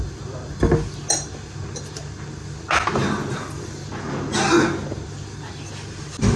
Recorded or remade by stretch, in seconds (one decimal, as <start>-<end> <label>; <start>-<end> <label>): 0.0-3.0 recorded; 3.0-3.9 remade; 3.9-6.4 recorded